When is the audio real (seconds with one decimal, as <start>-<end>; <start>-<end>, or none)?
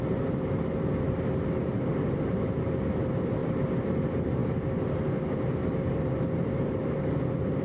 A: 3.4-3.9